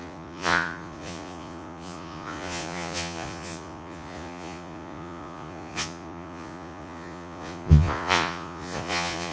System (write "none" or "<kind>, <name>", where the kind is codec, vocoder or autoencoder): vocoder, Vocos